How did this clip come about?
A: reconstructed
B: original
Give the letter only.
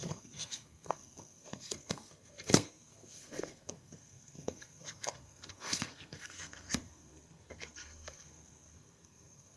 A